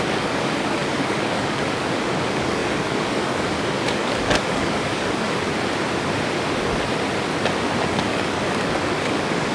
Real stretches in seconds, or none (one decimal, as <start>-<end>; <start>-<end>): 5.5-7.8